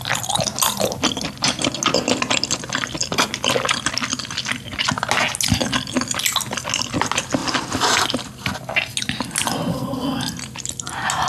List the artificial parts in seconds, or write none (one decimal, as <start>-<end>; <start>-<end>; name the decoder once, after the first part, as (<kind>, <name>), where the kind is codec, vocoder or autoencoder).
9.7-10.2 (codec, SNAC)